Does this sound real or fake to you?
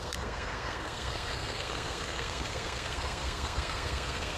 fake